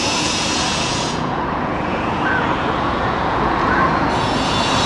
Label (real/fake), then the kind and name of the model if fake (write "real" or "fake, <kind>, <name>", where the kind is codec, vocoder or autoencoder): fake, vocoder, Vocos